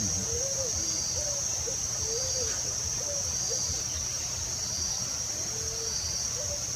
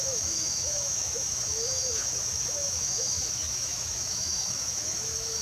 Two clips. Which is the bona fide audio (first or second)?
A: first